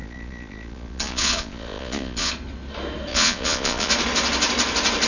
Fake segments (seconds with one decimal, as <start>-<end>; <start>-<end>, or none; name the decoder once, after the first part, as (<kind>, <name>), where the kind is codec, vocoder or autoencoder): 0.0-2.3 (vocoder, Vocos); 3.1-3.9